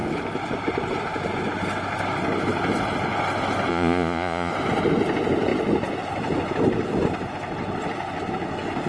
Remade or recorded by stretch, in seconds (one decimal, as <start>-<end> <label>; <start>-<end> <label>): 0.0-3.7 recorded; 3.7-4.5 remade; 4.5-8.9 recorded